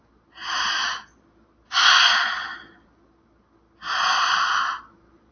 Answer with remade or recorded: recorded